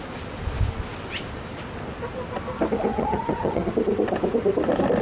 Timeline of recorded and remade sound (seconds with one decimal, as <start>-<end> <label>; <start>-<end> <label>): 0.0-2.9 recorded; 2.9-3.7 remade; 3.7-5.0 recorded